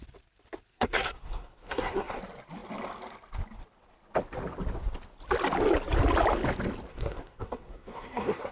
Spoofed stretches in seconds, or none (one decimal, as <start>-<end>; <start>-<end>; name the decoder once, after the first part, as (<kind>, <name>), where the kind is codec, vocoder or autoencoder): 0.7-2.2 (codec, SNAC); 6.9-8.5